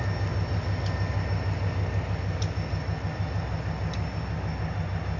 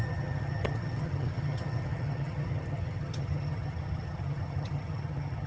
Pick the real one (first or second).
first